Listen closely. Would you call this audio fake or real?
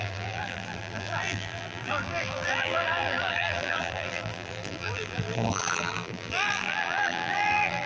fake